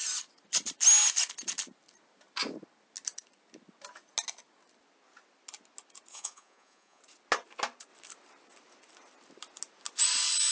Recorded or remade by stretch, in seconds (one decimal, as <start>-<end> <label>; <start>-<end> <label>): 0.0-6.1 recorded; 6.1-7.0 remade; 7.0-10.5 recorded